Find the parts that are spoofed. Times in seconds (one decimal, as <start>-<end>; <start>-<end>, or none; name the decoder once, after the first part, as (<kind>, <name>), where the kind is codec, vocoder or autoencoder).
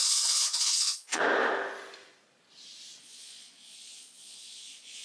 0.0-1.2 (vocoder, Vocos); 3.0-5.0